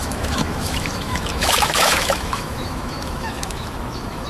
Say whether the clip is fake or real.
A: fake